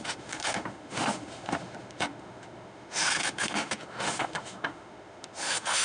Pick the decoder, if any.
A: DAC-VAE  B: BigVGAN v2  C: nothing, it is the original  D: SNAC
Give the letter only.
A